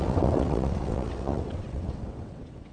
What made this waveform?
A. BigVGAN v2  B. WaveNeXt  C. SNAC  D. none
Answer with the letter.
B